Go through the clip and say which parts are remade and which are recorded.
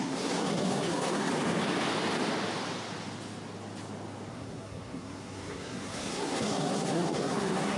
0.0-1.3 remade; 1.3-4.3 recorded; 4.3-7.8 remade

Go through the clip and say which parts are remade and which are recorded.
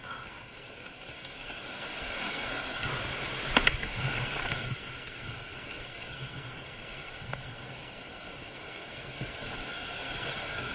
0.0-2.9 remade; 2.9-3.8 recorded; 3.8-10.7 remade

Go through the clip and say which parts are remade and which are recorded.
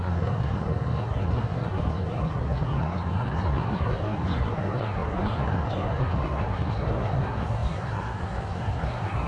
0.0-9.3 remade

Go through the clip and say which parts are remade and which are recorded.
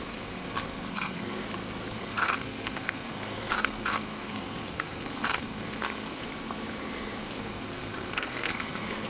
0.0-1.4 remade; 1.4-1.9 recorded; 1.9-6.2 remade; 6.2-7.2 recorded; 7.2-9.1 remade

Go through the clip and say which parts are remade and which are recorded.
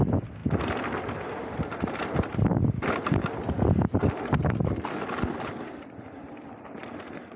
0.0-7.4 recorded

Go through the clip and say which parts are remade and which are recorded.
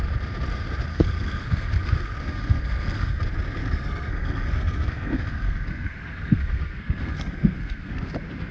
0.0-0.9 recorded; 0.9-3.2 remade; 3.2-3.6 recorded; 3.6-8.1 remade; 8.1-8.5 recorded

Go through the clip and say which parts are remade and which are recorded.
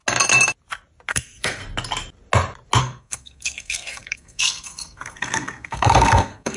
0.0-1.1 recorded; 1.1-1.6 remade; 1.6-2.8 recorded; 2.8-6.6 remade